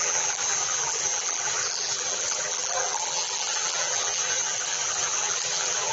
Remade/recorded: remade